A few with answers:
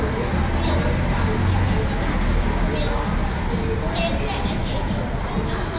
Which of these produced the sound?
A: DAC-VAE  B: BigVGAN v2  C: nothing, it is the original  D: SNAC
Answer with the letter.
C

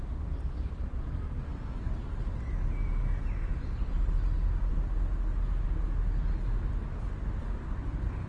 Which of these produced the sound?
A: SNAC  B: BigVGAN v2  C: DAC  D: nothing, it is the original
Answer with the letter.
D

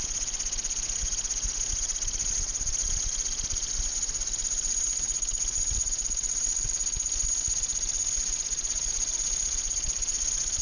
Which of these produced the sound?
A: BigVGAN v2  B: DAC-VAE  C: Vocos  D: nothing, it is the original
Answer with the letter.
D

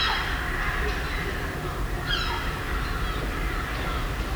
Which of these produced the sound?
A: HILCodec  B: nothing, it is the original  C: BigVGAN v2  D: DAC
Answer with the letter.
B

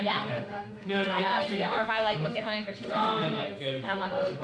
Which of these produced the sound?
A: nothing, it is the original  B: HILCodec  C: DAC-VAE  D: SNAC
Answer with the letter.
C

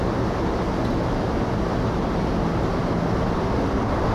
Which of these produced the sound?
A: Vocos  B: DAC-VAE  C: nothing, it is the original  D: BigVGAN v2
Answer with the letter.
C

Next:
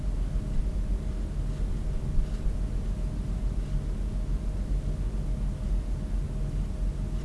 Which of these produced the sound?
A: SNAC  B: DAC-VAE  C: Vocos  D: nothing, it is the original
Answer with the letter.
D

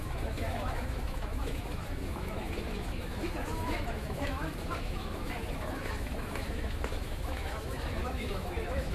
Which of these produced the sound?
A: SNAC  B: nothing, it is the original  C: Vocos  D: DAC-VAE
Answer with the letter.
D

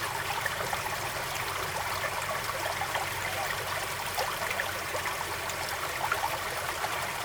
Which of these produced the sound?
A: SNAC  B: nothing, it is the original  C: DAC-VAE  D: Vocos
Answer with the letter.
B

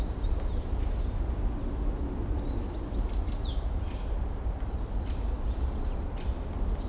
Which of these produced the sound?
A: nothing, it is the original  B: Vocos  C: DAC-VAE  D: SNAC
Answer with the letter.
A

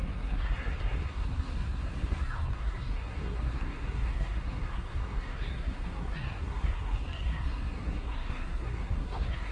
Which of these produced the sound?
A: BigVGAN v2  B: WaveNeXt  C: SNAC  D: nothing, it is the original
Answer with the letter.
C